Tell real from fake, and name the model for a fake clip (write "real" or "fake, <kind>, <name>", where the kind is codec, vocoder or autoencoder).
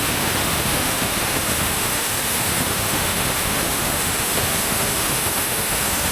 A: fake, autoencoder, DAC-VAE